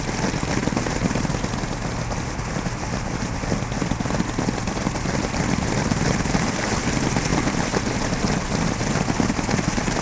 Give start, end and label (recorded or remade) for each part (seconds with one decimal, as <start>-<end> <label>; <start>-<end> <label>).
0.0-10.0 recorded